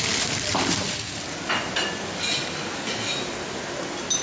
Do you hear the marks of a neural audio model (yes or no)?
no